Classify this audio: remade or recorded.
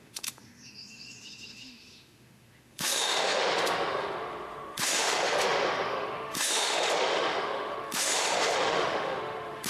remade